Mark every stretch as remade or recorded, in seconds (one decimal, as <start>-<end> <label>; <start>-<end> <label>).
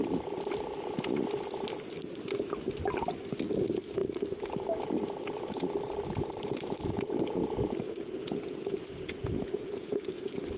0.0-8.2 recorded; 8.2-10.2 remade; 10.2-10.6 recorded